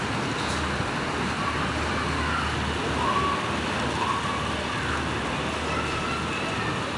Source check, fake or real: real